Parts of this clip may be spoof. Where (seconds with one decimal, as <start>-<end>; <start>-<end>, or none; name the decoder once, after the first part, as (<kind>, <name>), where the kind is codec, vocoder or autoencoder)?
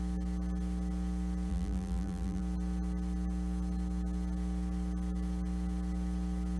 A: 1.5-2.4 (vocoder, BigVGAN v2)